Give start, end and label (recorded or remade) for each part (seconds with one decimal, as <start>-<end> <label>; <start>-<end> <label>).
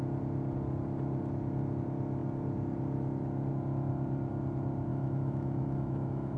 0.0-4.9 recorded; 4.9-6.4 remade